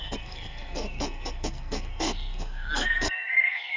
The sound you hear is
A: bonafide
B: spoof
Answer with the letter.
B